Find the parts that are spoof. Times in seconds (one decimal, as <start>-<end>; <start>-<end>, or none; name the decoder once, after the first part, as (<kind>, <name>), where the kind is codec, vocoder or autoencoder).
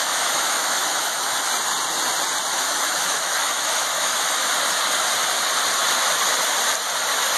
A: 0.0-1.5 (autoencoder, DAC-VAE); 2.5-4.5